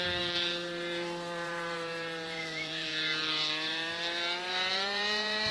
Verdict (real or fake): fake